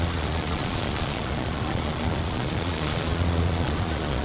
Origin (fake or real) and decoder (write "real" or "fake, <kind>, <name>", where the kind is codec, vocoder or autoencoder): fake, vocoder, Vocos